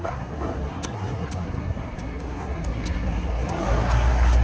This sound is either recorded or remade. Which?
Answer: remade